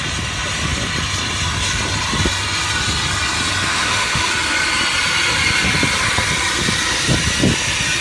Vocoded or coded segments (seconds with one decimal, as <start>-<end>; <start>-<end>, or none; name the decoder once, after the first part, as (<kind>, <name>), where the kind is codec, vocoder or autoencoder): 3.7-4.3 (autoencoder, DAC-VAE)

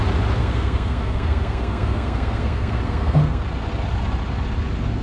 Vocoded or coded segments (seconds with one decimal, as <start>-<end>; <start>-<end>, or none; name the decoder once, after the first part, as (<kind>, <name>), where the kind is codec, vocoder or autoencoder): 0.4-3.4 (codec, SNAC)